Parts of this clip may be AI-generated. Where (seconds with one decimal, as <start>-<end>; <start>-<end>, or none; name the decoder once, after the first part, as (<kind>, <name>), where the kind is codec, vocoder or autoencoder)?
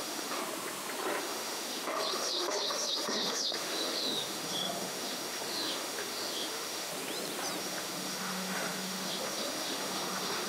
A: 0.0-0.4 (autoencoder, DAC-VAE); 1.2-6.9; 7.6-10.5